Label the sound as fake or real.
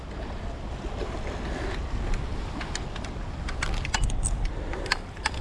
real